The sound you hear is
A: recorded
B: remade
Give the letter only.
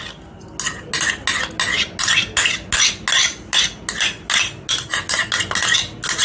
A